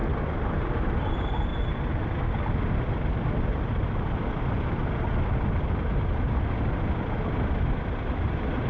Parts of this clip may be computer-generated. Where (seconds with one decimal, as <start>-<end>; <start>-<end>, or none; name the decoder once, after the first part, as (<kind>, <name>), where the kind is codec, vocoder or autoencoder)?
none